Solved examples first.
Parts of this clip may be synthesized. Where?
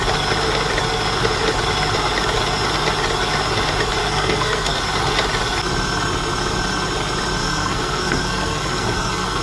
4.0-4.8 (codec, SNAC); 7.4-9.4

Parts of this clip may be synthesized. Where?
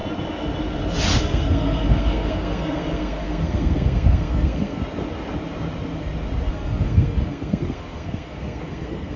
1.2-4.8 (codec, SNAC); 6.5-9.2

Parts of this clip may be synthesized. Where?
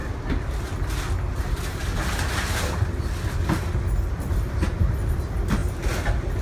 none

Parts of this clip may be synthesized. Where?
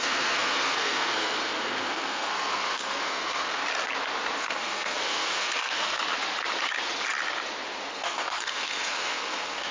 0.0-3.6 (codec, SNAC); 4.4-6.0; 7.9-9.7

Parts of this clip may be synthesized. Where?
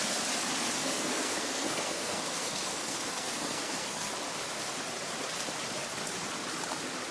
0.8-4.1 (codec, SNAC)